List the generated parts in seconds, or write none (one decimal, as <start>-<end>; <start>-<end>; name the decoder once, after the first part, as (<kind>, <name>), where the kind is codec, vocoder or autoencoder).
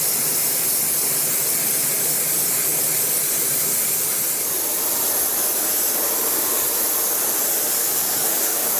7.8-8.8 (codec, DAC)